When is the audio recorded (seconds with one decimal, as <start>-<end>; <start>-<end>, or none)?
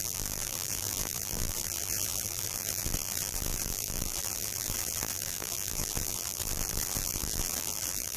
none